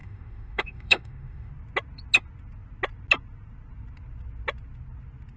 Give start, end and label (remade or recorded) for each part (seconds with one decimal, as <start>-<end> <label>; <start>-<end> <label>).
0.0-1.5 remade; 1.5-5.4 recorded